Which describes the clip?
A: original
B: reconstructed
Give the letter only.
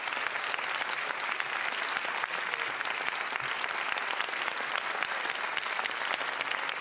A